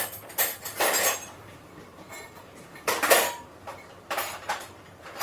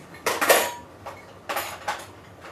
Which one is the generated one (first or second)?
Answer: first